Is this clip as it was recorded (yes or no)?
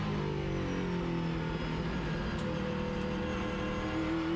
yes